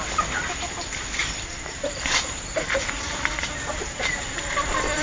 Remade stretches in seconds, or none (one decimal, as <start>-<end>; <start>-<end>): 1.2-4.2